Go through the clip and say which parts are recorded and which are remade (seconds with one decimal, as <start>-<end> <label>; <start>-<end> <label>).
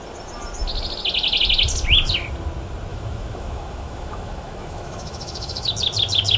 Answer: 0.0-2.9 recorded; 2.9-5.7 remade; 5.7-6.4 recorded